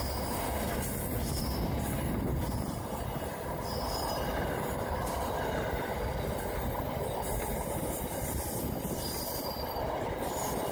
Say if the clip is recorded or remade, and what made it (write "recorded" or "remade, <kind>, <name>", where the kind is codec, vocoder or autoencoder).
recorded